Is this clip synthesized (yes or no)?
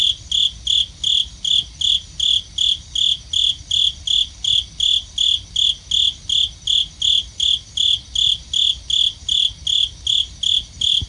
no